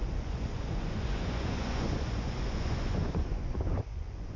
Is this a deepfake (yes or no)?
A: yes